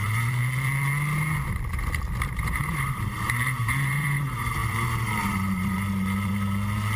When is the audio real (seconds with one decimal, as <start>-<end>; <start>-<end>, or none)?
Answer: 0.4-2.2